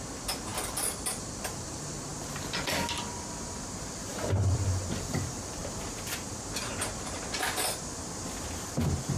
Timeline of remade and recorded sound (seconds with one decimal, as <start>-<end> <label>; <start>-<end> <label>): 0.0-2.1 remade; 2.1-4.1 recorded; 4.1-5.6 remade; 5.6-9.2 recorded